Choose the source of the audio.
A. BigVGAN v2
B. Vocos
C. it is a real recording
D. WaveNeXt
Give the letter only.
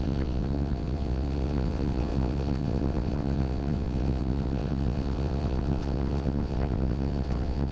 D